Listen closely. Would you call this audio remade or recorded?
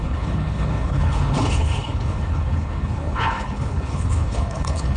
remade